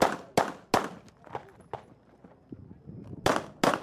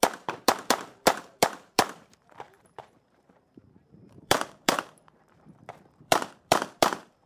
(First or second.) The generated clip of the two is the second